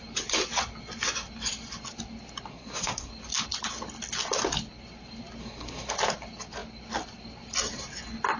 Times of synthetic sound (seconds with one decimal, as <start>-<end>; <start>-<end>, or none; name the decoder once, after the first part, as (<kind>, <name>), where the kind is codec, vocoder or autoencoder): 2.5-3.1 (codec, SNAC); 5.4-5.9